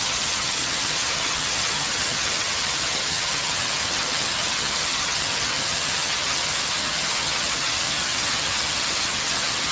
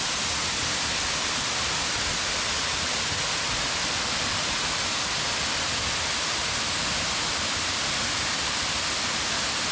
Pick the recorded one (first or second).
second